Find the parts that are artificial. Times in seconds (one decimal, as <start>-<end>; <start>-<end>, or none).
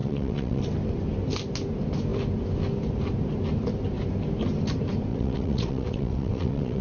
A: 0.0-0.6; 5.1-6.8